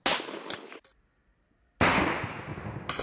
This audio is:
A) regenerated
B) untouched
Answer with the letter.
B